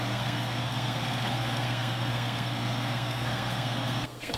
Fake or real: fake